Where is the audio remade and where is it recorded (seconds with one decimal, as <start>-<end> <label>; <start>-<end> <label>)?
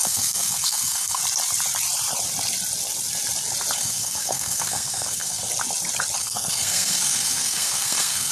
0.0-1.2 remade; 1.2-3.8 recorded; 3.8-5.5 remade; 5.5-6.2 recorded; 6.2-8.3 remade